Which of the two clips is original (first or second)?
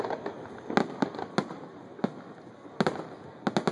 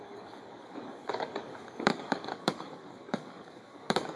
first